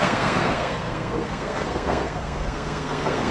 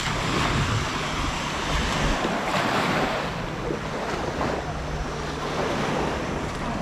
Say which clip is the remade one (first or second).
first